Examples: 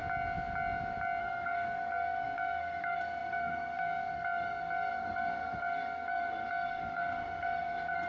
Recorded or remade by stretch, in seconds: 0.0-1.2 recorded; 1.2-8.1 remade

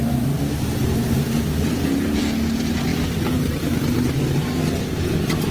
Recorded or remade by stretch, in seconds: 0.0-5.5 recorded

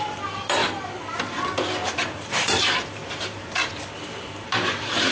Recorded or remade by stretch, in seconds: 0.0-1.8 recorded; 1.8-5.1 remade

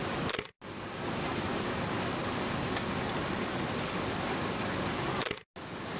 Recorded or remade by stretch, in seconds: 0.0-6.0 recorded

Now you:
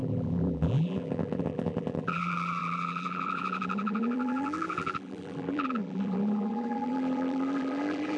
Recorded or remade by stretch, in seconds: 0.0-8.2 remade

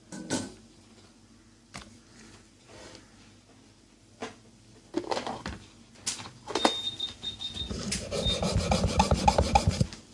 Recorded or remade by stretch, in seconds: 0.0-4.2 recorded; 4.2-4.8 remade; 4.8-10.1 recorded

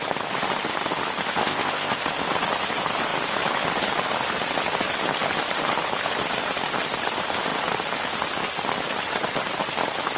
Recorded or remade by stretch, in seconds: 0.0-1.4 recorded; 1.4-2.0 remade; 2.0-10.2 recorded

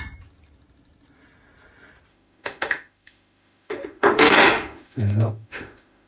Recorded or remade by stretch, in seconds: 0.0-2.1 recorded; 2.1-6.1 remade